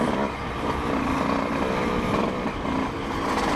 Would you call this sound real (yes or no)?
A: yes